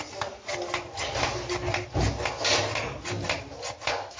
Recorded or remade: recorded